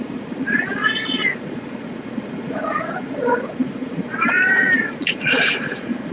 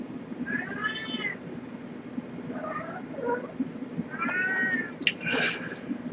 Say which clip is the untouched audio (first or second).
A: second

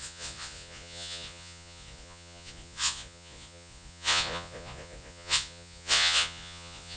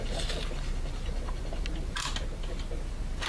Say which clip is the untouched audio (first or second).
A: second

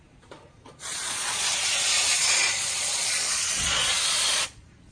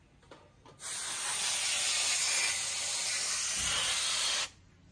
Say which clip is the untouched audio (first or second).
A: second